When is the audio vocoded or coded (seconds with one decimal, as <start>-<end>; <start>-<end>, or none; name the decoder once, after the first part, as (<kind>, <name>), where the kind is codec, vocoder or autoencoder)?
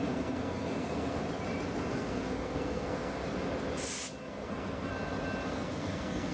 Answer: 0.0-1.2 (codec, SNAC); 1.9-3.2; 4.2-4.9; 5.5-6.3